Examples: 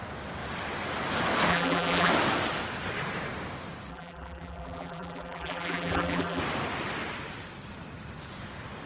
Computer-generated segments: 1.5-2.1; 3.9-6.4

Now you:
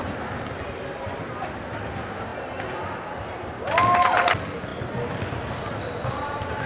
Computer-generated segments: none

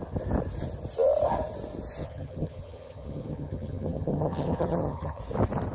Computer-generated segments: 2.0-5.2